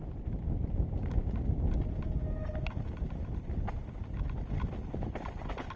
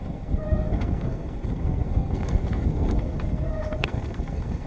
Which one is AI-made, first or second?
second